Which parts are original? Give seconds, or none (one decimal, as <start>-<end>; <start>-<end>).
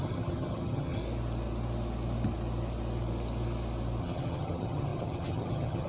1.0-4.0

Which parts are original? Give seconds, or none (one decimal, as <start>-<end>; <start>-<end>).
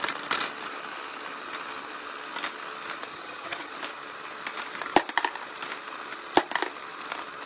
0.0-3.1; 3.7-7.5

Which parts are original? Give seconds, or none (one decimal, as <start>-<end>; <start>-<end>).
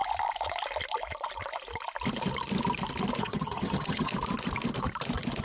0.0-3.2; 4.1-5.4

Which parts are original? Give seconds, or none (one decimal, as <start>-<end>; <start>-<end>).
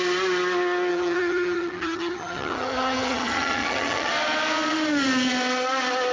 0.0-0.9; 4.1-6.1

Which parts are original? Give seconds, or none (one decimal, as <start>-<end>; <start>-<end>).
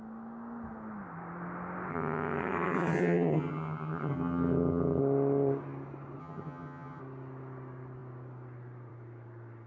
0.0-1.9; 5.0-6.2; 7.0-9.7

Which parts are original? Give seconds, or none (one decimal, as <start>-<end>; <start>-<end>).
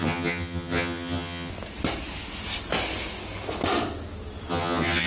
1.5-4.5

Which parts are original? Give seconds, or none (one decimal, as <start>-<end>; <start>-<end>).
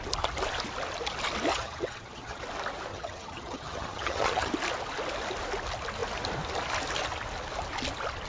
0.0-1.5; 2.4-2.9; 4.5-8.3